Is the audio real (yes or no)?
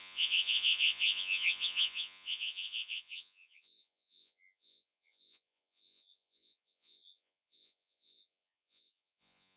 no